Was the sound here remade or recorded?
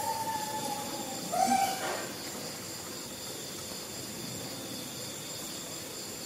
recorded